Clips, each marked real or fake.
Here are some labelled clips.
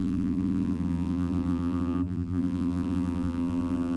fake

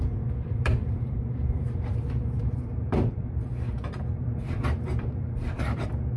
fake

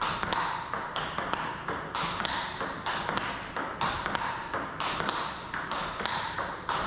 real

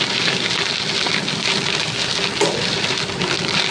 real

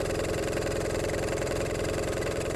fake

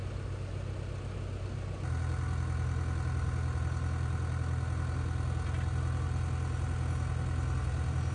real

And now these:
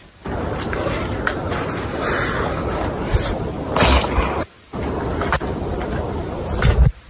real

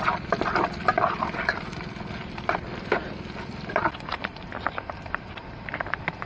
fake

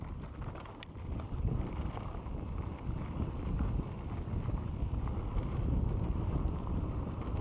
real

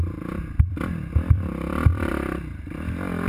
fake